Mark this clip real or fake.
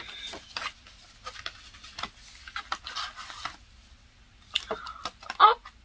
real